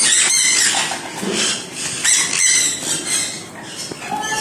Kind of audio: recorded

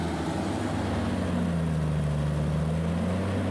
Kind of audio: recorded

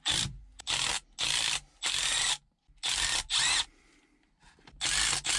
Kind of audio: recorded